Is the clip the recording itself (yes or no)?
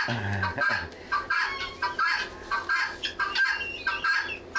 yes